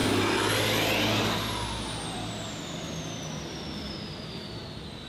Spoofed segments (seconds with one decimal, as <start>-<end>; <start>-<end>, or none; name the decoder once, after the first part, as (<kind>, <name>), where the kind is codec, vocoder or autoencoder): 3.5-4.6 (vocoder, BigVGAN v2)